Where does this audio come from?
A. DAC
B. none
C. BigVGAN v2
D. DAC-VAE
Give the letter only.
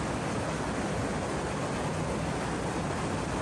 B